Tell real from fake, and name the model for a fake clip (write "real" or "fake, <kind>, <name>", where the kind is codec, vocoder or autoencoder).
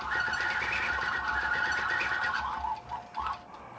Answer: real